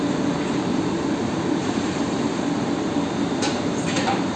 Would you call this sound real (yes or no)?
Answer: no